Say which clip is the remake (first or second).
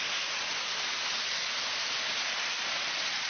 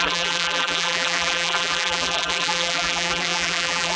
second